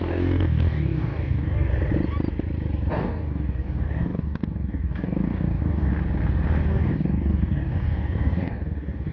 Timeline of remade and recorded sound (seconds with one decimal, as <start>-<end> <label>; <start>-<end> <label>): 0.0-1.7 remade; 1.7-2.9 recorded; 2.9-5.9 remade; 5.9-6.7 recorded; 6.7-9.1 remade